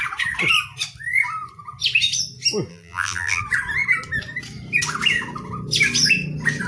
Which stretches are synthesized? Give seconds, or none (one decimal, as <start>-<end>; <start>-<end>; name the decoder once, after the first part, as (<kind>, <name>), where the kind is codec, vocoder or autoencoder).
2.7-3.4 (vocoder, BigVGAN v2)